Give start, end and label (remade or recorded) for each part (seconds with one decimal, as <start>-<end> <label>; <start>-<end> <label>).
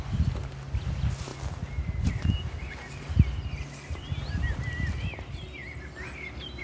0.0-6.6 recorded